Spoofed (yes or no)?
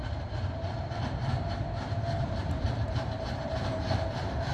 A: yes